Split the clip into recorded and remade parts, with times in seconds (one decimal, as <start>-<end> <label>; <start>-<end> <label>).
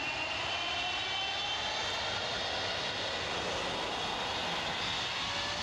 0.0-5.6 recorded